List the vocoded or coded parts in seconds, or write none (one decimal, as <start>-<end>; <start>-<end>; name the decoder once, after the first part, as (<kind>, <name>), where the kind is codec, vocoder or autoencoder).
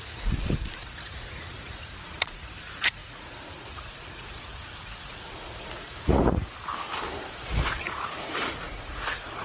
0.0-6.7 (vocoder, Vocos); 7.2-9.4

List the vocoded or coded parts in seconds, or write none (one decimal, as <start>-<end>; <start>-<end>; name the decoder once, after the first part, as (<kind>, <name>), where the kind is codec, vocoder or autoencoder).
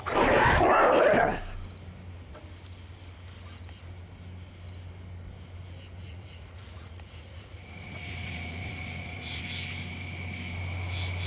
6.0-9.4 (vocoder, Vocos)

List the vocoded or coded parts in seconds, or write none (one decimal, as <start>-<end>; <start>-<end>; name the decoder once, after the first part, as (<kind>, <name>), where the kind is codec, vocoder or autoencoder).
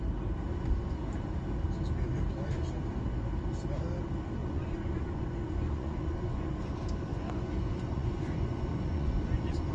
4.4-6.6 (vocoder, Vocos); 7.1-9.7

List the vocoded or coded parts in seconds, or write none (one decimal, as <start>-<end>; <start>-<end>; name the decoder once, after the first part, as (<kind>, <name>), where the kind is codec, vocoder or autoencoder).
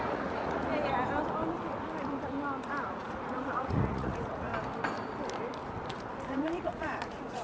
0.0-0.7 (vocoder, Vocos); 2.8-4.5; 6.3-7.4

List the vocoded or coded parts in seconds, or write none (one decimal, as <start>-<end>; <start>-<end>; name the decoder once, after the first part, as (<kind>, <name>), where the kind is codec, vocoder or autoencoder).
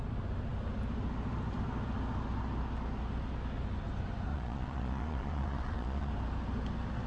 4.3-6.1 (vocoder, Vocos)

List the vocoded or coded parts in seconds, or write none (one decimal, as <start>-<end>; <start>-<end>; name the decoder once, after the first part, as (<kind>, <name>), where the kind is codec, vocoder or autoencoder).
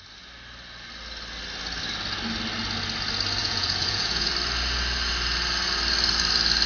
3.4-4.3 (vocoder, Vocos)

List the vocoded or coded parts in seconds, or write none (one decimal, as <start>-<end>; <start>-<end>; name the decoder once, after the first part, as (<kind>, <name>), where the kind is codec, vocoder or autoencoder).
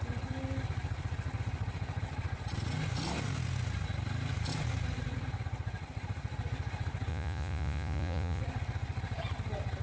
7.1-8.4 (vocoder, Vocos)